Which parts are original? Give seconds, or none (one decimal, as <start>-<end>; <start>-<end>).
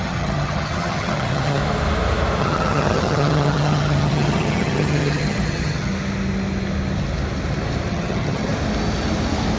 1.6-2.4; 5.9-7.9; 8.5-9.6